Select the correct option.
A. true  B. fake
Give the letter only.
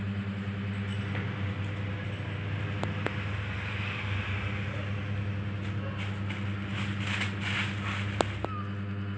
A